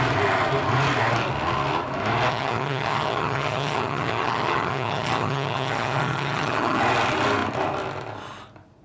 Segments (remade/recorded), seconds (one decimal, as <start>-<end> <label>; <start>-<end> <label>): 0.0-2.3 recorded; 2.3-6.8 remade; 6.8-8.8 recorded